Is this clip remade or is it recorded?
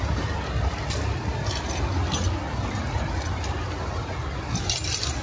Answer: recorded